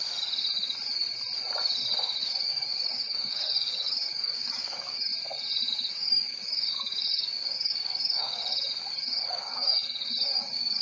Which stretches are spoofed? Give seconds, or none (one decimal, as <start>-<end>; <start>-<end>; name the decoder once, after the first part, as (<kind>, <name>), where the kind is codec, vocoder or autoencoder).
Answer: 2.4-5.1 (codec, DAC); 5.7-8.4; 8.9-10.8